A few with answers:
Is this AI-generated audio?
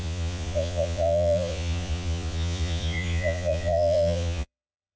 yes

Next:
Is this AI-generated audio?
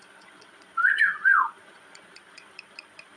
yes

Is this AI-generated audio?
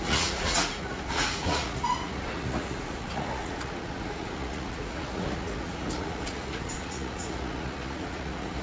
yes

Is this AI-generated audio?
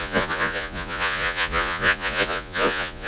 yes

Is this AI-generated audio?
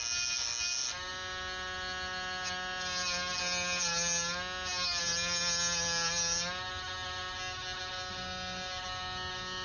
no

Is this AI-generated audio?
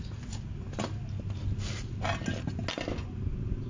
no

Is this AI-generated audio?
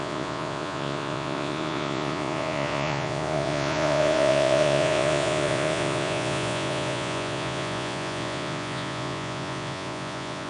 yes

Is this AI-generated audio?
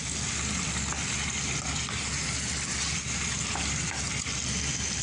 no